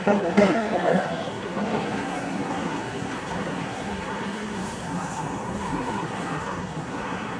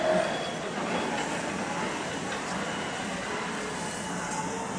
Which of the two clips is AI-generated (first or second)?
first